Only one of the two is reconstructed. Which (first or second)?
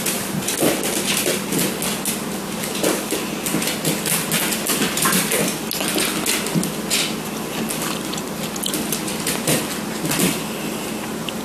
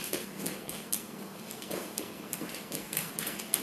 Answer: second